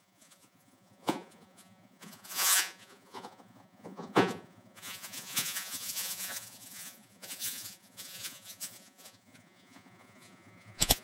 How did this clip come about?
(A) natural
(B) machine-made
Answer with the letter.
B